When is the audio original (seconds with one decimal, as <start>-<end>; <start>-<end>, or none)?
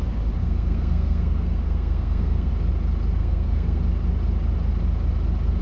0.0-0.4; 2.5-3.2; 3.8-5.6